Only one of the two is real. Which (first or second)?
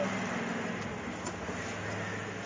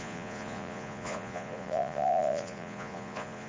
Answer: first